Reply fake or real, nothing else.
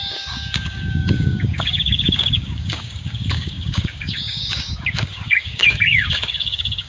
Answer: fake